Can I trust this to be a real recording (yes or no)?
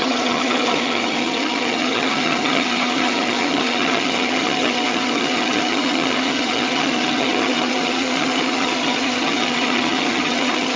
no